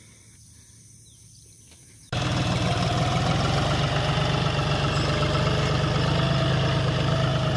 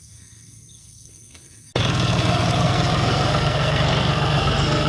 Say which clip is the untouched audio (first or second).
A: first